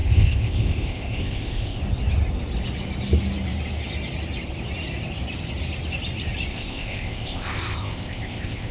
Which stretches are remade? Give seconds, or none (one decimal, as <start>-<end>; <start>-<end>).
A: 0.0-1.8; 6.5-8.7